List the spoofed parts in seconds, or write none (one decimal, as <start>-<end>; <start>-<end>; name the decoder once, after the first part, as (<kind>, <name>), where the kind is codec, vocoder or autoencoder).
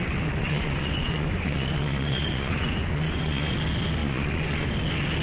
0.4-3.5 (vocoder, Vocos); 4.0-4.7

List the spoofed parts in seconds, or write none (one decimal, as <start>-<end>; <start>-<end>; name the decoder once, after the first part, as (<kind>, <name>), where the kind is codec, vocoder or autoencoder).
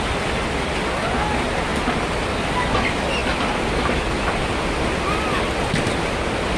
none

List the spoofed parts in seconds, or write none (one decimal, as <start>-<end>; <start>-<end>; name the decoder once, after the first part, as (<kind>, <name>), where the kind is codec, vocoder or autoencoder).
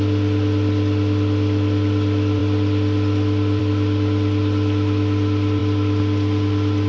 none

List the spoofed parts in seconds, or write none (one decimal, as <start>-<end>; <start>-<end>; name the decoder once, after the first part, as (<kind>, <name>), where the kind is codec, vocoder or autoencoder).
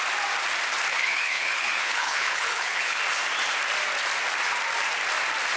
0.9-3.0 (codec, HILCodec)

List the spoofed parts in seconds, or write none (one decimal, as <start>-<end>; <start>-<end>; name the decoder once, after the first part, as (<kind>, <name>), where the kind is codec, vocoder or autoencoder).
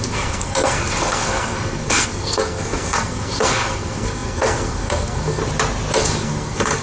0.0-5.4 (codec, SNAC); 6.0-6.8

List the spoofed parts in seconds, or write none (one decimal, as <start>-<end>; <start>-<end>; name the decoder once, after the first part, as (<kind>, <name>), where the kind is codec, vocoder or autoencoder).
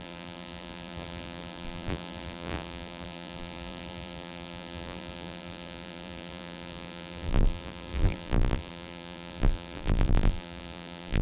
0.0-11.2 (vocoder, BigVGAN v2)